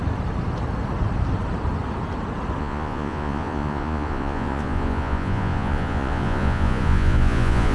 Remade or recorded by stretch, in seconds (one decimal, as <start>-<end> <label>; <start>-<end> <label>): 0.0-2.6 recorded; 2.6-7.7 remade